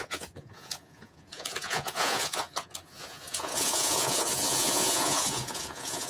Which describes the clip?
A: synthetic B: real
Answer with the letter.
A